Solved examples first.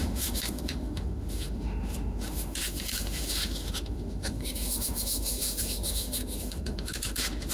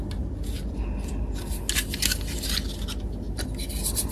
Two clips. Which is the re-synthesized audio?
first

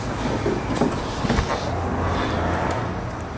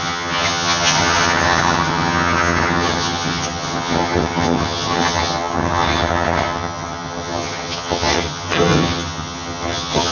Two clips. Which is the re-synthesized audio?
second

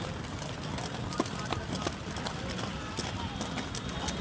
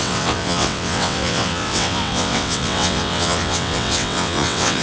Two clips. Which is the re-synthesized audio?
second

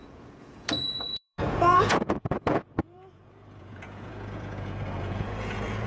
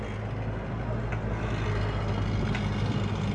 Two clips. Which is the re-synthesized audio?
first